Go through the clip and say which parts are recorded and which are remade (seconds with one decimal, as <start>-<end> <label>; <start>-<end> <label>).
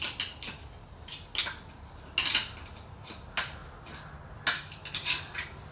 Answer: 0.0-5.7 recorded